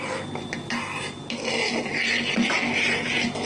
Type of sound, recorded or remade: recorded